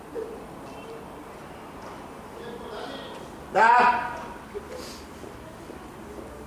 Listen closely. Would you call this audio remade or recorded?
recorded